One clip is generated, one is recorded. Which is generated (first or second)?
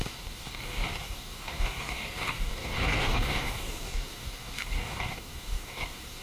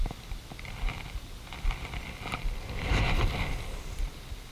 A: first